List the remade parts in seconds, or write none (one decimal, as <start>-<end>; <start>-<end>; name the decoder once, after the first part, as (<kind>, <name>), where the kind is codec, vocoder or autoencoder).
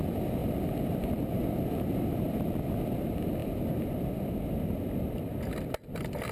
0.4-1.3 (vocoder, BigVGAN v2)